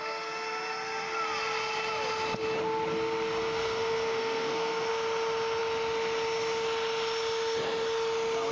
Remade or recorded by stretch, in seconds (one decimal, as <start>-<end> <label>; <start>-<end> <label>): 0.0-3.4 recorded; 3.4-4.9 remade; 4.9-8.5 recorded